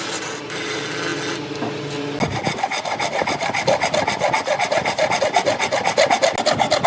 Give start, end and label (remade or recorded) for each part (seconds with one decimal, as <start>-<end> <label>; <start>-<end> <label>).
0.0-6.9 recorded

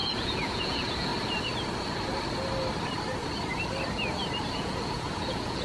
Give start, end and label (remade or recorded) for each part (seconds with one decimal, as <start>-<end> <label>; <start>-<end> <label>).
0.0-1.1 remade; 1.1-4.5 recorded; 4.5-5.6 remade

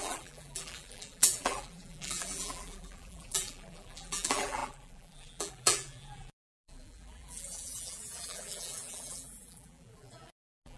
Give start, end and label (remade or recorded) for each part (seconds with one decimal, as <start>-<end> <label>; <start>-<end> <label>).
0.0-10.8 remade

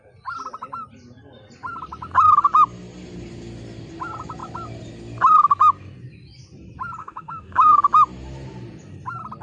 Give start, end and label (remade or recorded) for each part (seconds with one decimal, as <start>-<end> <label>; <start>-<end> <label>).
0.0-7.0 recorded; 7.0-7.8 remade; 7.8-9.4 recorded